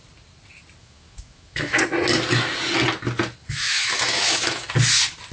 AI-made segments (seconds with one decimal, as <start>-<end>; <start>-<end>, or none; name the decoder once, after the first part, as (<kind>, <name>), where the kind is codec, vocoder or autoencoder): 0.8-1.8 (autoencoder, DAC-VAE); 3.4-4.7